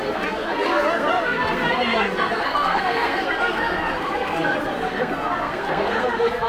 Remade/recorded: remade